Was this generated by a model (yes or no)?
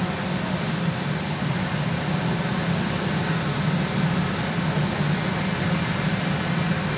no